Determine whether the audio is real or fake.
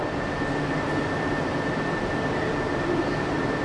real